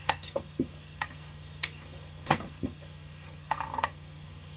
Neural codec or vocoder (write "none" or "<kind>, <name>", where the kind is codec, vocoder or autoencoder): codec, SNAC